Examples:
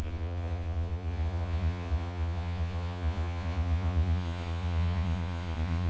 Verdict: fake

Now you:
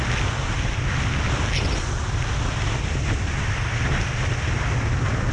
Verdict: real